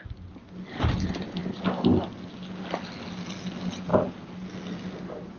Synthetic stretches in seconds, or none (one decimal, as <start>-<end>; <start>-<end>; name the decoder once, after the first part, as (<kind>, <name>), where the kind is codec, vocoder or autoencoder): none